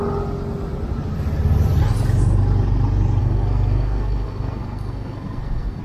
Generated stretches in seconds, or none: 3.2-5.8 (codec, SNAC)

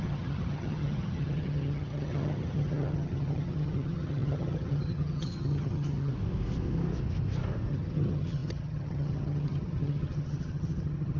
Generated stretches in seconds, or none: 0.0-6.1 (vocoder, HiFi-GAN); 7.7-11.2

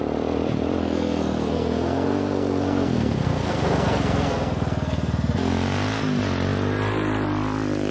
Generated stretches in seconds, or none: 0.8-5.5 (codec, SNAC)

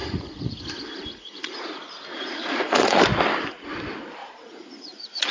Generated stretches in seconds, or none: 0.0-0.6 (vocoder, Vocos); 1.1-3.0; 4.2-5.3

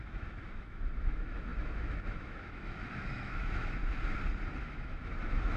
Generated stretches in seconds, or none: 0.0-3.8 (autoencoder, DAC-VAE); 4.6-5.6

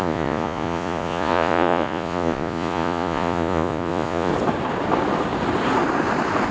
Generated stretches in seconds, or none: 0.0-4.3 (vocoder, Vocos)

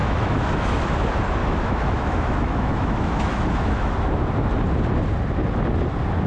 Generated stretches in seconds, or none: 0.0-0.9 (autoencoder, DAC-VAE); 1.4-3.9

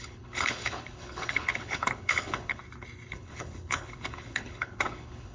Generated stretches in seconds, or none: 0.0-2.6 (codec, HILCodec); 3.1-5.3